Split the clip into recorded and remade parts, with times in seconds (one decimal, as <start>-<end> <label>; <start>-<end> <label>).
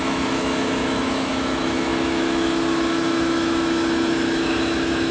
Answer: 0.0-5.1 remade